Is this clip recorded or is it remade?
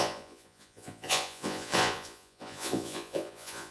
remade